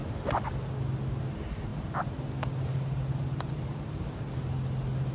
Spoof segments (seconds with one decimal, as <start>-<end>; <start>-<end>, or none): none